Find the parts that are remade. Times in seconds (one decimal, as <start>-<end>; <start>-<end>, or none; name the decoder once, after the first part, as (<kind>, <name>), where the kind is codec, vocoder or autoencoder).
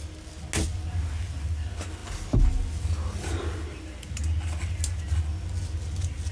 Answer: none